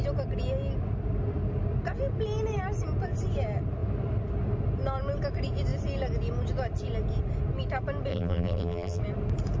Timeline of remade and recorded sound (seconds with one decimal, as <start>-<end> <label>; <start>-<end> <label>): 0.0-8.1 recorded; 8.1-9.0 remade; 9.0-9.6 recorded